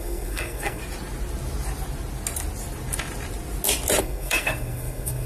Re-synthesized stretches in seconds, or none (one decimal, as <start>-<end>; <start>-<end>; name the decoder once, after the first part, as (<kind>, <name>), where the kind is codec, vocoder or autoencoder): 0.0-0.8 (codec, SNAC); 4.0-5.3